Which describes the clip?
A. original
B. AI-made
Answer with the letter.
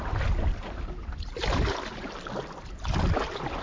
A